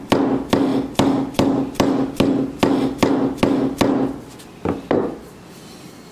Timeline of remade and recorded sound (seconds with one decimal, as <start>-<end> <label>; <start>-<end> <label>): 0.0-6.1 recorded